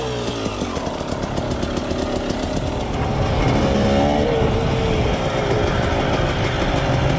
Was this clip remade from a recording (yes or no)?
no